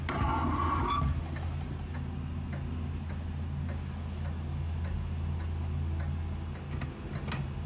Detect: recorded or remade recorded